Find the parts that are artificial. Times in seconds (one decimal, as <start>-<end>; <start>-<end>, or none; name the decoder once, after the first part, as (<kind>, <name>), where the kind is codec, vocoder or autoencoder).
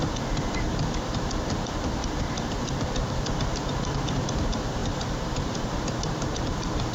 2.0-2.7 (vocoder, BigVGAN v2); 4.8-6.5